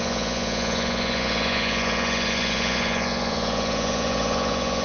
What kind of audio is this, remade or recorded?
remade